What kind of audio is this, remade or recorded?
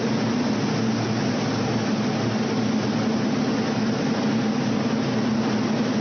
recorded